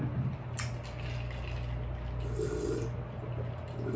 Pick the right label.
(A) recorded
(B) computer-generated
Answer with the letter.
A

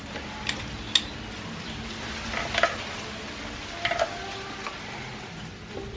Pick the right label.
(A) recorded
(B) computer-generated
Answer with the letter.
A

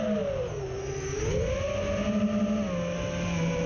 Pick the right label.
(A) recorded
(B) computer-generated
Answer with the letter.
A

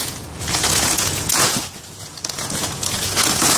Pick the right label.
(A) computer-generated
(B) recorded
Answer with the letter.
A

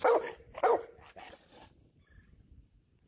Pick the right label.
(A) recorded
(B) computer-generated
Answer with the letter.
A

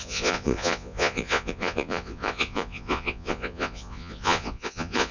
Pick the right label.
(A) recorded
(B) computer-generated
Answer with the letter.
B